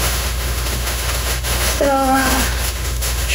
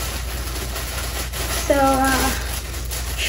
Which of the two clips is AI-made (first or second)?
first